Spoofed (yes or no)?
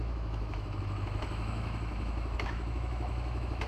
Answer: yes